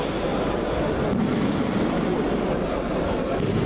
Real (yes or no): yes